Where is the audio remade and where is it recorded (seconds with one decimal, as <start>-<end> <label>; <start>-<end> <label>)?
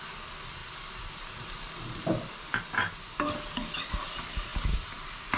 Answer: 0.0-0.6 recorded; 0.6-2.5 remade; 2.5-4.5 recorded; 4.5-5.4 remade